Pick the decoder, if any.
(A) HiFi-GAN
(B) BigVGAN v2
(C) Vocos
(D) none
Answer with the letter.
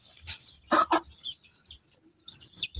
D